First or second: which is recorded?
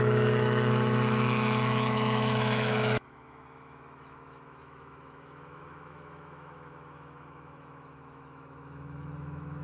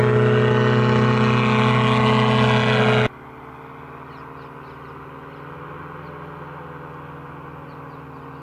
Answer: second